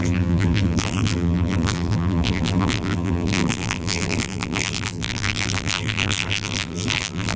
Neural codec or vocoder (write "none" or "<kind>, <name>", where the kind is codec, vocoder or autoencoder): vocoder, BigVGAN v2